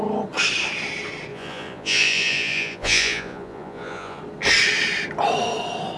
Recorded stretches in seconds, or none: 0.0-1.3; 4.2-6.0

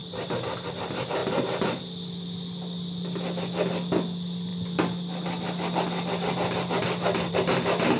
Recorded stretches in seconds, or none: 0.0-8.0

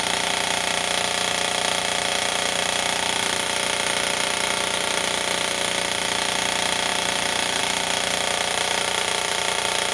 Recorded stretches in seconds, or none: 0.0-6.9; 7.6-9.9

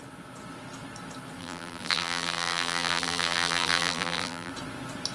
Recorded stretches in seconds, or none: 0.0-1.4; 4.5-5.1